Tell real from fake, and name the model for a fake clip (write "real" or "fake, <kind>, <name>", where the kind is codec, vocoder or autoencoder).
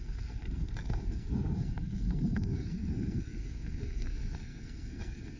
fake, codec, SNAC